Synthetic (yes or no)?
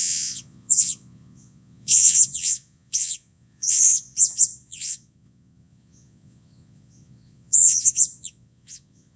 yes